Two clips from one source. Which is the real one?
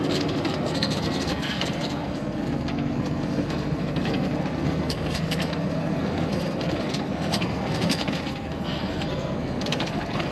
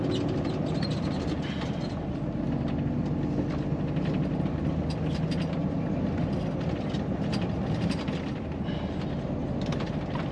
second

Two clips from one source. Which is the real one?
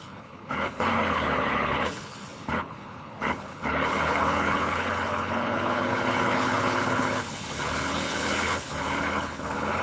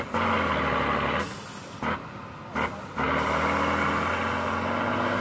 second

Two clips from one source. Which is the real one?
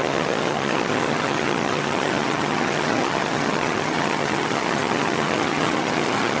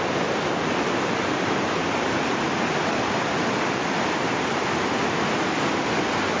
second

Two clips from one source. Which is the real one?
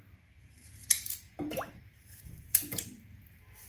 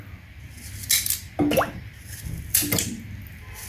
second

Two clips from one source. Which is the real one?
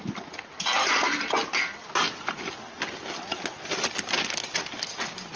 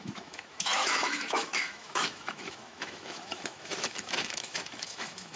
first